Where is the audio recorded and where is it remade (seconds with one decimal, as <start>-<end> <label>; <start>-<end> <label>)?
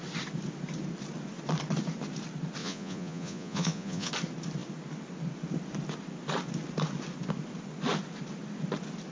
0.0-2.6 recorded; 2.6-4.1 remade; 4.1-9.1 recorded